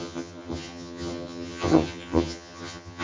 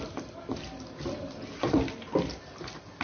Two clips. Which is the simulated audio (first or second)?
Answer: first